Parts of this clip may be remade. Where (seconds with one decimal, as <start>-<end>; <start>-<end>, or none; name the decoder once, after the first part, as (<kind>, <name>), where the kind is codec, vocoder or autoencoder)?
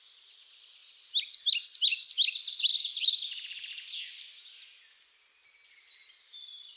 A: none